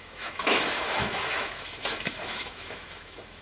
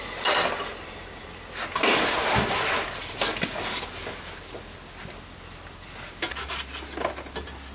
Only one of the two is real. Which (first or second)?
second